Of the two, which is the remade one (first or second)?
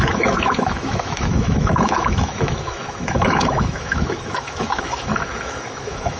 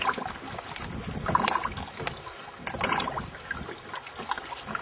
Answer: first